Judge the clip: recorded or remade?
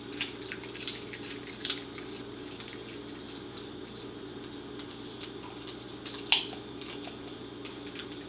recorded